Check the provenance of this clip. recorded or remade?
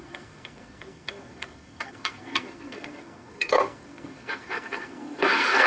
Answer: remade